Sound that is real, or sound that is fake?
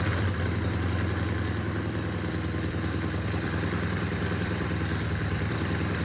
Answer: fake